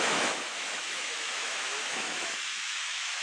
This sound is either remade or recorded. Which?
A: remade